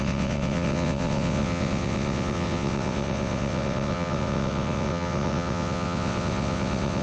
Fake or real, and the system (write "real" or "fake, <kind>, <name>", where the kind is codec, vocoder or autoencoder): fake, vocoder, WaveNeXt